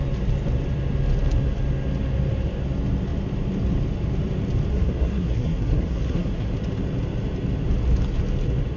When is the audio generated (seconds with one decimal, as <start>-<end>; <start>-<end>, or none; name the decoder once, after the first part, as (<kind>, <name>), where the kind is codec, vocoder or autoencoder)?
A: 4.7-6.5 (codec, SNAC)